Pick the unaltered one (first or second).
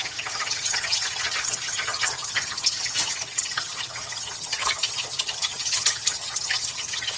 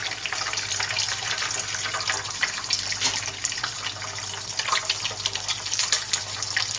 second